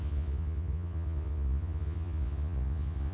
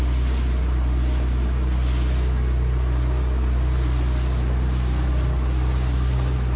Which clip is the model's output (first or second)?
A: first